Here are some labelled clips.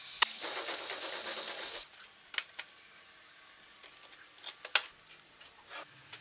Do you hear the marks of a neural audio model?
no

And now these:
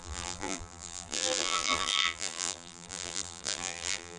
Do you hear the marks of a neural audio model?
yes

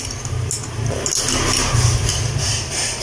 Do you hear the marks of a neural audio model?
no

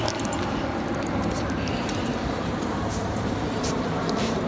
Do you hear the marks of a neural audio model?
yes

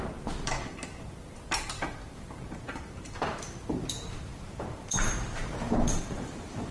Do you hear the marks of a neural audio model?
yes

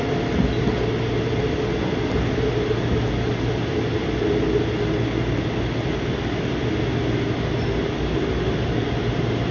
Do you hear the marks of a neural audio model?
no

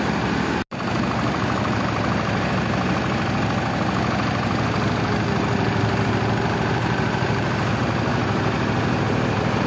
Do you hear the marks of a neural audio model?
no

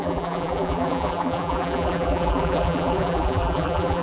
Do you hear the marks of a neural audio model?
yes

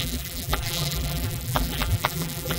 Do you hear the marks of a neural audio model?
yes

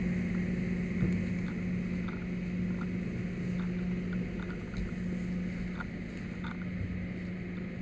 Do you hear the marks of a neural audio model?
no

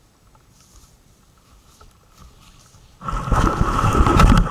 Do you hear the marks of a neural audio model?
no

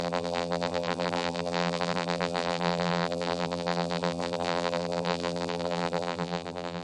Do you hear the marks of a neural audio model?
yes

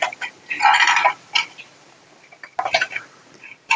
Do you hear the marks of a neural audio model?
yes